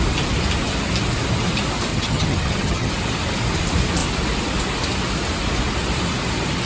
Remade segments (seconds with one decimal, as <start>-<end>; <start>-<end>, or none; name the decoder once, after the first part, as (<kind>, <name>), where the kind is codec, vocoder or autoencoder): 1.9-2.9 (vocoder, HiFi-GAN)